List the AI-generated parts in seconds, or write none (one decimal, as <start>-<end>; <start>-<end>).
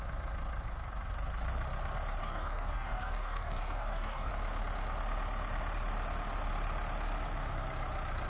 2.2-4.3